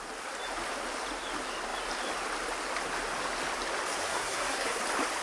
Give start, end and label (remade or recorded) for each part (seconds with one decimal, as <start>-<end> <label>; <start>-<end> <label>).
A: 0.0-4.1 recorded; 4.1-4.8 remade; 4.8-5.2 recorded